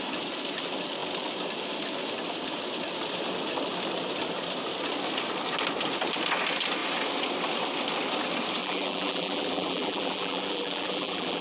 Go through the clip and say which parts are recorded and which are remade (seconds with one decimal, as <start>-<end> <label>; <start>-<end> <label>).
0.0-8.6 recorded; 8.6-11.4 remade